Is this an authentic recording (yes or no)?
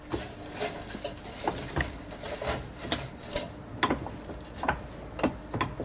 yes